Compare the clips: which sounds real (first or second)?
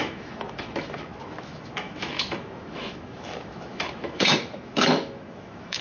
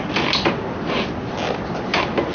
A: second